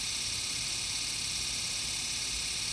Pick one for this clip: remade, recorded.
recorded